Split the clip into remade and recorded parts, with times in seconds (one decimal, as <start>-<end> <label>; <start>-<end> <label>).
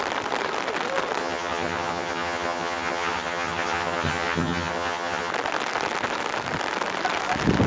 0.0-1.2 recorded; 1.2-5.3 remade; 5.3-7.7 recorded